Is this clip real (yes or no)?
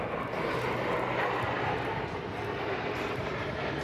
no